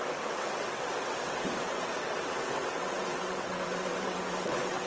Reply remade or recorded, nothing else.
remade